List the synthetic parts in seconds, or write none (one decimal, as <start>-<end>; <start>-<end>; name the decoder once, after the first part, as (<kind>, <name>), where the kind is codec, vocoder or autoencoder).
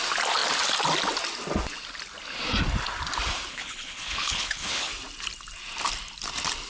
3.5-4.9 (codec, HILCodec)